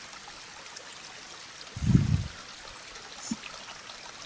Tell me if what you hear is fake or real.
real